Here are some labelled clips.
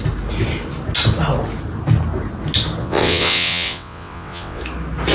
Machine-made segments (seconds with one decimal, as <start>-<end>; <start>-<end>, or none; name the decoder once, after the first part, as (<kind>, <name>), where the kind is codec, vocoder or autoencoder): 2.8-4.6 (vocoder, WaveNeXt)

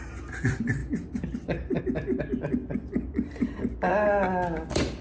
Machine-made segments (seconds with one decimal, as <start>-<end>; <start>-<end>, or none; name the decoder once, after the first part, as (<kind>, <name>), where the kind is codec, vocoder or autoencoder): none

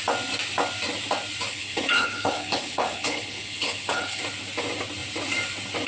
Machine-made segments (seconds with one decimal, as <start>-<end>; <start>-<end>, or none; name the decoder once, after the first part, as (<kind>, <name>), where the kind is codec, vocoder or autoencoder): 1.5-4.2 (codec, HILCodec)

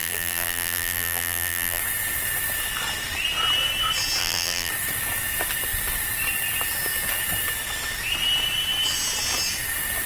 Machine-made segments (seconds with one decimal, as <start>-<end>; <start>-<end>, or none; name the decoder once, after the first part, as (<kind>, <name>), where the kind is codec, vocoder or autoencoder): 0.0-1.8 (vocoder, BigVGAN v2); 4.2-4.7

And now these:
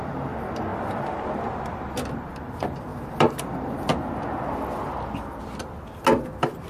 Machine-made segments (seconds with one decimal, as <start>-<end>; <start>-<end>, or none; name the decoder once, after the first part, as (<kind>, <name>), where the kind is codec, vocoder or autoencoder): 0.0-3.9 (vocoder, BigVGAN v2); 6.3-6.7

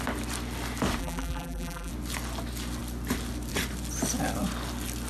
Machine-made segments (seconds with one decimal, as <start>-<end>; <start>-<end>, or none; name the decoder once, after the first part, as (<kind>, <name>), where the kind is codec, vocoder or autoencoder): 1.0-1.9 (vocoder, BigVGAN v2)

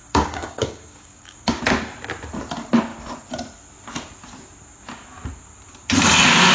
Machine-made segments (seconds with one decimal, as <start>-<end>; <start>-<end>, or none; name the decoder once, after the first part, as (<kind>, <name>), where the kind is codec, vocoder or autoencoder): 0.0-1.6 (codec, DAC)

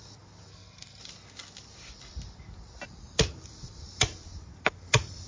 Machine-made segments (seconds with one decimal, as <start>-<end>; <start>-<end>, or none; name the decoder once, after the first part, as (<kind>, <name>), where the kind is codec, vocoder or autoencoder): 0.5-1.0 (codec, SNAC)